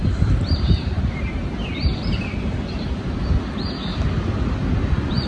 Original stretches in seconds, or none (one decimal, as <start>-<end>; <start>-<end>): 3.2-5.3